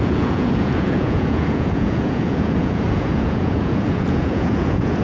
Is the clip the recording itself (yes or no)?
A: no